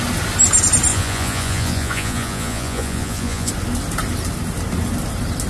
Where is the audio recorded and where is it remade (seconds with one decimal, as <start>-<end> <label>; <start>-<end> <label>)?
0.0-0.9 recorded; 0.9-3.5 remade; 3.5-5.5 recorded